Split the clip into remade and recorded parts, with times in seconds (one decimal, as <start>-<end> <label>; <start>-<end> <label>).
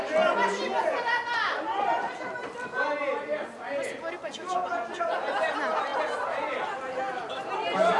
0.0-8.0 recorded